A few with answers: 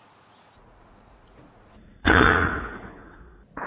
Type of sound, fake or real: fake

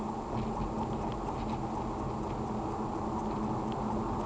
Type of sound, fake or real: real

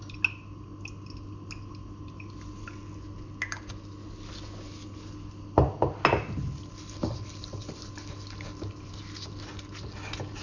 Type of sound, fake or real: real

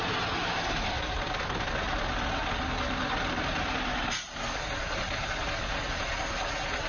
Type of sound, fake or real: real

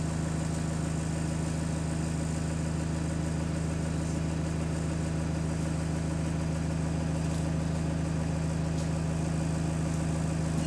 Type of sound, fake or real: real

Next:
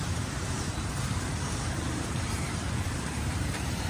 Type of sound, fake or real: fake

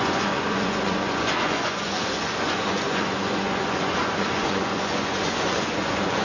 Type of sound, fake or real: fake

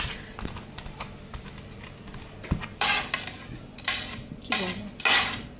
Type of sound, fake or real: real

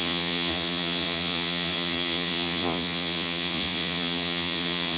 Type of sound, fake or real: fake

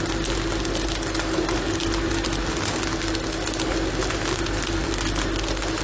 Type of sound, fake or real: real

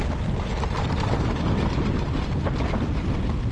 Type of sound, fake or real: real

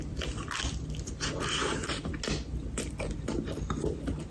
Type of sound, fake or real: real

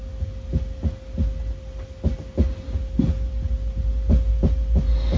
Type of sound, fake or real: real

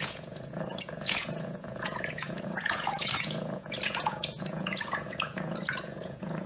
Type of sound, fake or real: fake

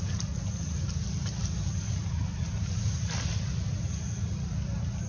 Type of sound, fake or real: real